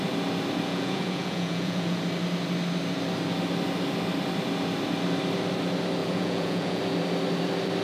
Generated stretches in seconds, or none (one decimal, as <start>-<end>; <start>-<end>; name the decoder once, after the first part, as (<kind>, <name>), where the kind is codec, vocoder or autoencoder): 0.7-2.0 (vocoder, Vocos); 6.0-6.8